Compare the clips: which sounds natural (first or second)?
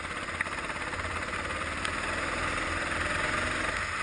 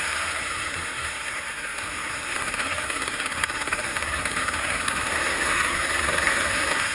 first